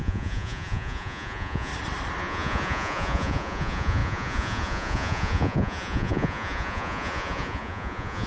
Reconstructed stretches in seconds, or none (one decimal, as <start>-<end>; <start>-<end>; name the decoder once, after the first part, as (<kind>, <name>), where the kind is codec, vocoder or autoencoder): 0.0-1.7 (vocoder, Vocos); 2.2-8.3